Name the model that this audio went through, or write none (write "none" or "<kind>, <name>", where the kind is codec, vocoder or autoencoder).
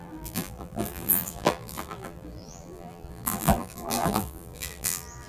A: vocoder, BigVGAN v2